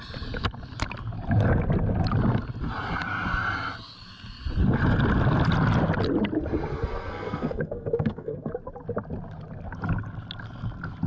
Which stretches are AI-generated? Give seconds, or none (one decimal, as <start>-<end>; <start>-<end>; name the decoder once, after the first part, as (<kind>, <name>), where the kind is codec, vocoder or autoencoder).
6.7-8.5 (codec, SNAC)